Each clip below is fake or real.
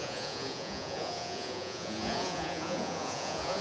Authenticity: fake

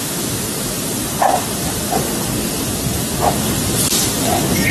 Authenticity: real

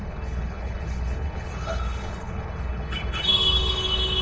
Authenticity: fake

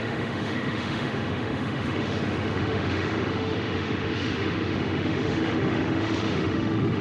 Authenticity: fake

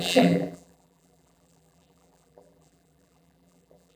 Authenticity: fake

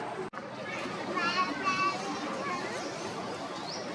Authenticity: real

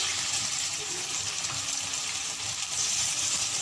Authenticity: real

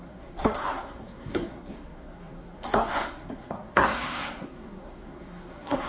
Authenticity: fake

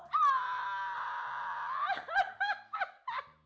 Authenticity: real